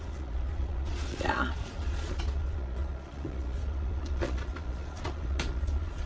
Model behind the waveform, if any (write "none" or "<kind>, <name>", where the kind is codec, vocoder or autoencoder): vocoder, Vocos